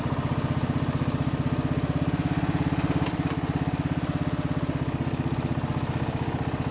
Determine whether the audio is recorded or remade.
recorded